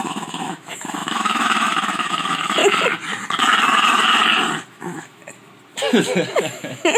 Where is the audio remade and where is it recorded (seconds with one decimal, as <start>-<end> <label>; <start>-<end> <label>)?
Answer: 0.0-2.6 remade; 2.6-4.7 recorded; 4.7-5.2 remade; 5.2-6.3 recorded; 6.3-7.0 remade

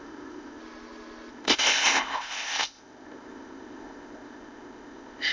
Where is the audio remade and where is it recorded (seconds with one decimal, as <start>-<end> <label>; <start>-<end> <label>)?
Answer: 0.0-0.6 remade; 0.6-1.3 recorded; 1.3-5.3 remade